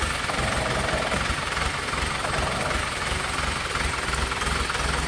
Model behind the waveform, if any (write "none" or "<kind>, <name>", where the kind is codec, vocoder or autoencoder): none